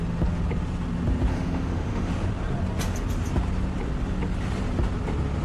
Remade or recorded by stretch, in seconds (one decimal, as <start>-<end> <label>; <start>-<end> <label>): 0.0-1.3 recorded; 1.3-2.1 remade; 2.1-5.4 recorded